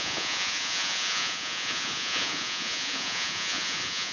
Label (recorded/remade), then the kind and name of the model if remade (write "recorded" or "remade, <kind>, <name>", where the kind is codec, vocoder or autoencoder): remade, vocoder, Vocos